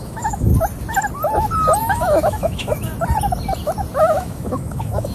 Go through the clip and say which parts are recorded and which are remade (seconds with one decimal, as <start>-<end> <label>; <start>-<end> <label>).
0.0-0.5 remade; 0.5-1.8 recorded; 1.8-2.9 remade; 2.9-4.0 recorded; 4.0-5.1 remade